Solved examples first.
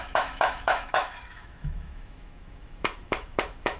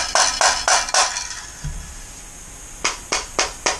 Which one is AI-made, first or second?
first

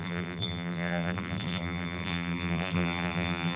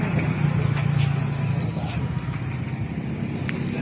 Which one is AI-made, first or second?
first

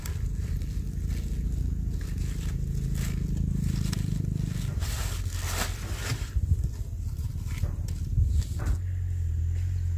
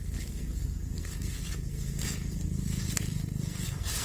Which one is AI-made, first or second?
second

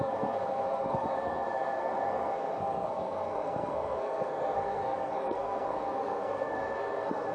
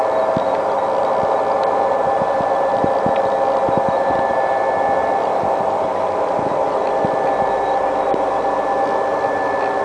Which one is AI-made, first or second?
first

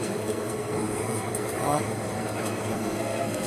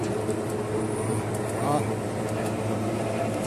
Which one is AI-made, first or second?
first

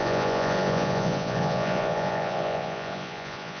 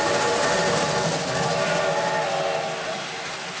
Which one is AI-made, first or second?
first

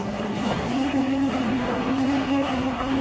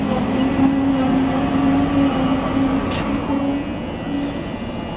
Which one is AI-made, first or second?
first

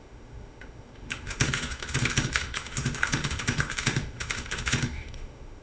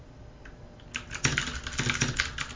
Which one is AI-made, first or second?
first